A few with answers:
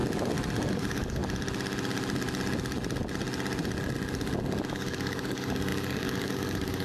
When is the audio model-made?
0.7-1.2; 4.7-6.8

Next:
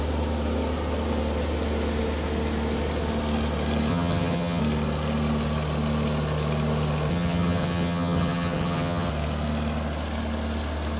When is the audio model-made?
3.9-4.6; 7.1-9.1

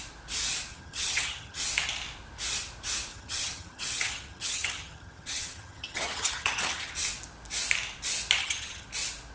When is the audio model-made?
0.7-1.6; 3.1-6.9; 8.4-8.9